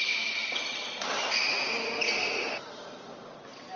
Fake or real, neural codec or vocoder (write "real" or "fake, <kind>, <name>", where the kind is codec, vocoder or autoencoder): real